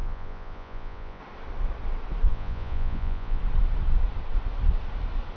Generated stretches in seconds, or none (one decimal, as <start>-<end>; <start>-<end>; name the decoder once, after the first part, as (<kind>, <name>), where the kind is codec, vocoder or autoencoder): 0.0-1.2 (vocoder, Vocos); 2.3-3.4